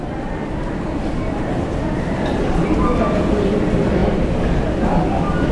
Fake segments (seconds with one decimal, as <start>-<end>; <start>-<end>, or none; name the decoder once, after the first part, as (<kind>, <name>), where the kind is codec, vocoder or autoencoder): none